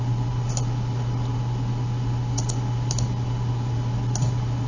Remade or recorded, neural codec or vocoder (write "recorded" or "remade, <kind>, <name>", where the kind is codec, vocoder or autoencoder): recorded